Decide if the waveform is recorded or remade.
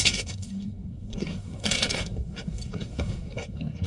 remade